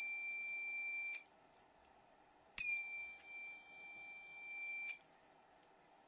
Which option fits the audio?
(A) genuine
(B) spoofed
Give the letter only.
A